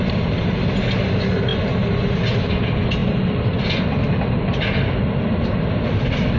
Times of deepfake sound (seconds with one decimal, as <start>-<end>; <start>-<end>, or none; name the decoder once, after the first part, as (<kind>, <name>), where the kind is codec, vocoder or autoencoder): none